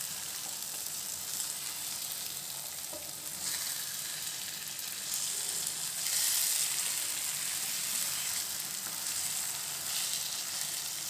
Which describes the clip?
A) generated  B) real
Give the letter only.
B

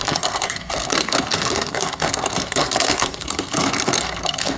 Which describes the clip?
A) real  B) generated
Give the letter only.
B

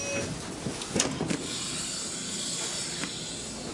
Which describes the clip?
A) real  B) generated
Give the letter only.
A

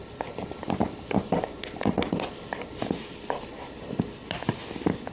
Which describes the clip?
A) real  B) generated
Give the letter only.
A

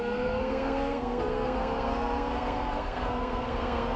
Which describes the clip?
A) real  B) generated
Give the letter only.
B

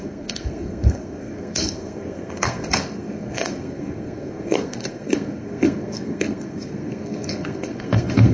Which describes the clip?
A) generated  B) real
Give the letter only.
A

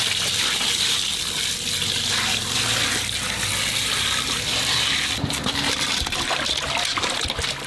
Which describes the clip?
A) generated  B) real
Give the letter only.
B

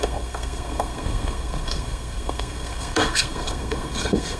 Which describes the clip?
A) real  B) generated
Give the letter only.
B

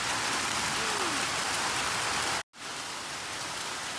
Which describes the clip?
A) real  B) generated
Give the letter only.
A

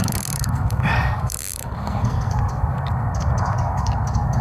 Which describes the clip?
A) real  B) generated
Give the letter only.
B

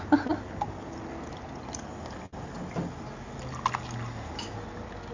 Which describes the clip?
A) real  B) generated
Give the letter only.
A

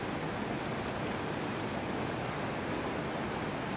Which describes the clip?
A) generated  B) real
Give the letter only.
B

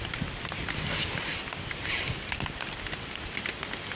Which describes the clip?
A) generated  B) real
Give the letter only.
B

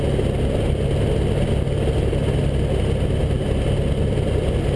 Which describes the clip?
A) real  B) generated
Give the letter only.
A